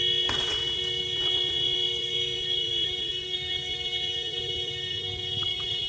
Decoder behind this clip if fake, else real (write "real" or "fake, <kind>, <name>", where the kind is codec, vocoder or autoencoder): real